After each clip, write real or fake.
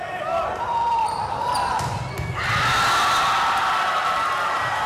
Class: real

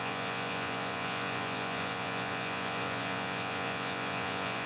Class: fake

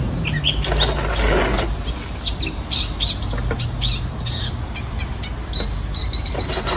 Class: real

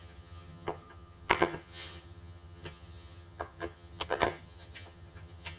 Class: fake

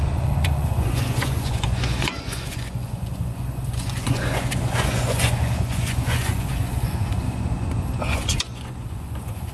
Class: fake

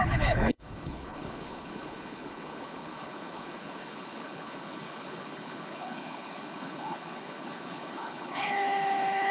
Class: fake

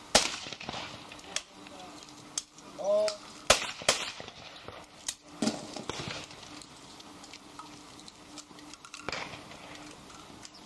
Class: real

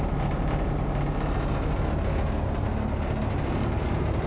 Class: real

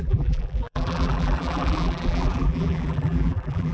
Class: fake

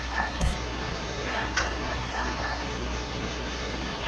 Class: fake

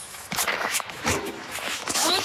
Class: fake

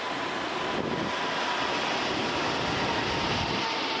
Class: real